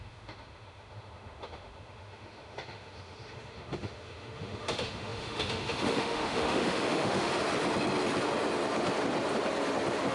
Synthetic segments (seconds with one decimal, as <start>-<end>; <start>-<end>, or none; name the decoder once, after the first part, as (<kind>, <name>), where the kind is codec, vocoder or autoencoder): 0.0-7.3 (autoencoder, DAC-VAE)